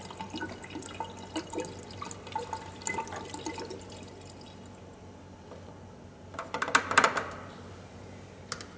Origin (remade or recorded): recorded